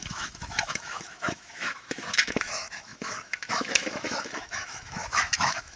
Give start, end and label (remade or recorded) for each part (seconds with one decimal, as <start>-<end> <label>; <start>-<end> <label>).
0.0-5.8 remade